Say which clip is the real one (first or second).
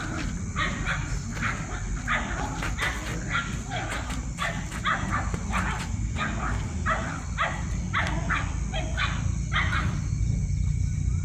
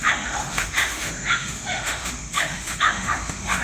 first